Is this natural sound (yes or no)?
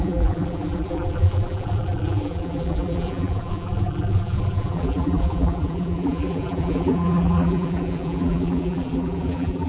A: no